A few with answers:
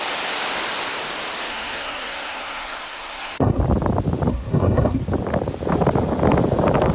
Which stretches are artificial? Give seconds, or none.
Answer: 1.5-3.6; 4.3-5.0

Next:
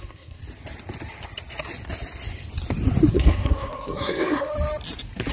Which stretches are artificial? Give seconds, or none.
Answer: 0.0-0.4; 3.1-4.5

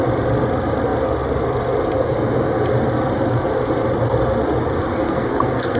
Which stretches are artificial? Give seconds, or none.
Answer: 4.9-5.8

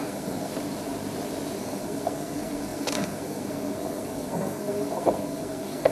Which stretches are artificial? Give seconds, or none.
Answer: 0.0-0.5; 1.6-5.9

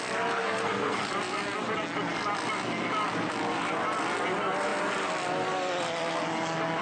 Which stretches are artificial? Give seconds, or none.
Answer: 0.4-1.1